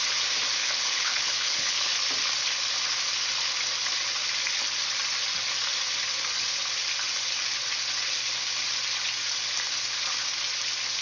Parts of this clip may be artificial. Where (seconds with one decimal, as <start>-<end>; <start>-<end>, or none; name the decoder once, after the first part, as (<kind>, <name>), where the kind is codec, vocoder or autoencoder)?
0.6-1.9 (codec, HILCodec)